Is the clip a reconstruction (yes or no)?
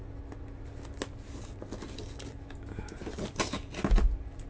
no